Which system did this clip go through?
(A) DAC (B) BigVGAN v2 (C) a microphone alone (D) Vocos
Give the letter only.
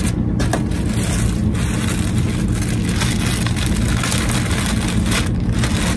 C